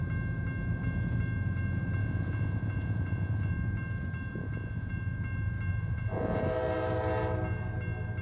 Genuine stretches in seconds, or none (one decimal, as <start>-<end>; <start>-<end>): 0.0-2.0; 3.5-4.4; 4.9-5.8; 6.4-8.2